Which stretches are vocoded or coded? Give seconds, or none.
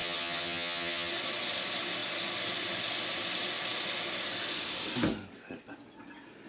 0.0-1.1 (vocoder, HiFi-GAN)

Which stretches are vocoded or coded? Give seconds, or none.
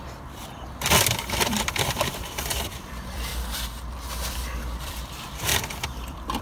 0.0-3.3 (vocoder, BigVGAN v2); 4.3-6.4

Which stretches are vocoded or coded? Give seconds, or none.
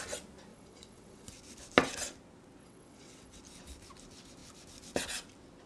0.5-1.4 (vocoder, WaveNeXt); 2.6-3.4